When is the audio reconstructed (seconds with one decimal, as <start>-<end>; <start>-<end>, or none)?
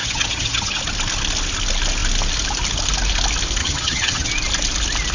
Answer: 0.0-0.8; 3.6-4.3